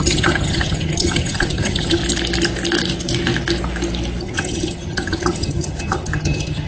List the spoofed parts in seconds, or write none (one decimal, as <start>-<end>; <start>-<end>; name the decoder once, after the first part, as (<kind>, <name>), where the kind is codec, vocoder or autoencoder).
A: 0.0-2.0 (vocoder, HiFi-GAN); 4.2-6.7